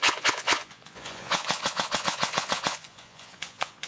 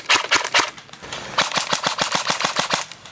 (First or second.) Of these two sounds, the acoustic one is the second